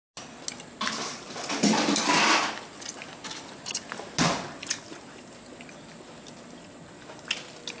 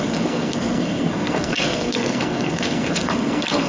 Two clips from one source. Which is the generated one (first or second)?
second